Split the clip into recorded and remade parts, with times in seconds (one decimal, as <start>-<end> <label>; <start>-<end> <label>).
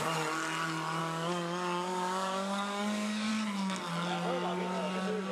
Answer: 0.0-1.0 recorded; 1.0-3.3 remade; 3.3-5.3 recorded